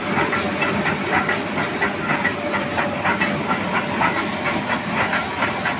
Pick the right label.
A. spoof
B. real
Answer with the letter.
B